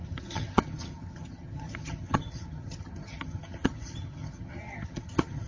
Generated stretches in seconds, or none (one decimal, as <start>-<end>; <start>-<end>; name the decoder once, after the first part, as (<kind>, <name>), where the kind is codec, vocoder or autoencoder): 0.0-5.5 (vocoder, HiFi-GAN)